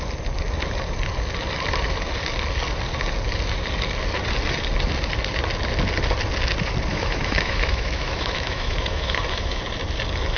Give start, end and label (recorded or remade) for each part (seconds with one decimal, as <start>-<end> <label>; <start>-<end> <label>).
0.0-6.9 recorded; 6.9-9.6 remade; 9.6-10.4 recorded